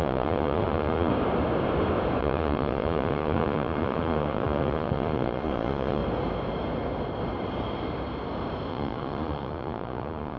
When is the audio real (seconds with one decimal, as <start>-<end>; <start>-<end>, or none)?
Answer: 1.1-2.2; 6.0-8.7